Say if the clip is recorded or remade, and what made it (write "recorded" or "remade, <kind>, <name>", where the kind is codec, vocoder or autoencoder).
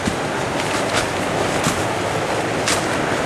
recorded